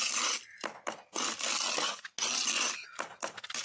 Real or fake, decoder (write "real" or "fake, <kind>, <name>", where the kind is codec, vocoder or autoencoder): real